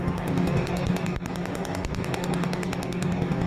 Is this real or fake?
fake